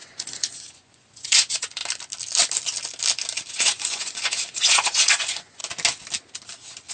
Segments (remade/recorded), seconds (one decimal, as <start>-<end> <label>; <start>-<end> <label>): 0.0-1.8 remade; 1.8-3.5 recorded; 3.5-5.6 remade; 5.6-6.9 recorded